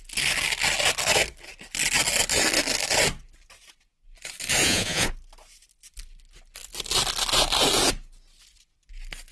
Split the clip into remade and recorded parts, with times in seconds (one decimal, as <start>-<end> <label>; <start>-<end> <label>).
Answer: 0.0-4.6 recorded; 4.6-5.1 remade; 5.1-9.3 recorded